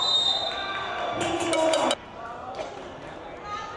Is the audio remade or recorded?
recorded